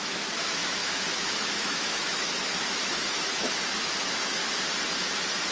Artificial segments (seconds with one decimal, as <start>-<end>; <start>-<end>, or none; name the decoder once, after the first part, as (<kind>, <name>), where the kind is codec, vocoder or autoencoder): 0.0-4.4 (autoencoder, DAC-VAE)